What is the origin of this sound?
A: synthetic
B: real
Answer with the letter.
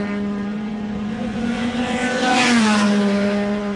A